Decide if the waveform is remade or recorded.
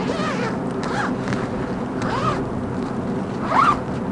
recorded